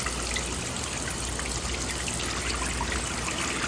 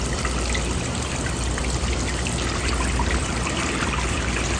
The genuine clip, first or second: first